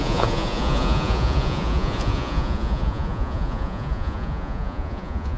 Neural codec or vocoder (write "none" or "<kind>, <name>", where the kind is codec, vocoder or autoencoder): vocoder, Vocos